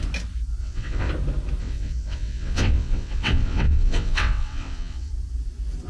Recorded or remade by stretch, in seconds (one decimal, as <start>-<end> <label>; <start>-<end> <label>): 0.0-0.6 recorded; 0.6-1.1 remade; 1.1-1.6 recorded; 1.6-5.1 remade; 5.1-5.9 recorded